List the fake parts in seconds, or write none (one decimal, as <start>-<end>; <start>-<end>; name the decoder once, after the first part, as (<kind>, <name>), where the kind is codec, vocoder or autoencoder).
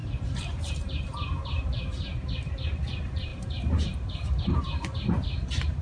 0.0-2.1 (vocoder, BigVGAN v2); 2.9-5.8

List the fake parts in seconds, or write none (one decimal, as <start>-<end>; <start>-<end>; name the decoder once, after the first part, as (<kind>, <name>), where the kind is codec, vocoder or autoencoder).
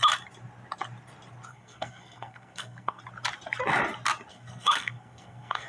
1.5-3.0 (codec, SNAC); 4.3-5.7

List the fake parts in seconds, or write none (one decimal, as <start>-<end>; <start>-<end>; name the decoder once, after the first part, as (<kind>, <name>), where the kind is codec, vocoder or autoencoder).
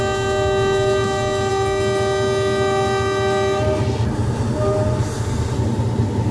none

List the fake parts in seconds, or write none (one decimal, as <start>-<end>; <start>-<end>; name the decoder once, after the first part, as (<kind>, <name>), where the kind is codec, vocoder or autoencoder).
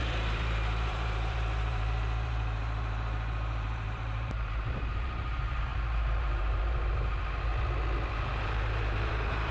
0.0-7.5 (vocoder, BigVGAN v2); 8.1-9.5